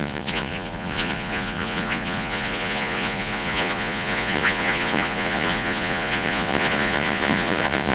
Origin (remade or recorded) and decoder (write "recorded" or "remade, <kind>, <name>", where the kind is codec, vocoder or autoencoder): remade, vocoder, Vocos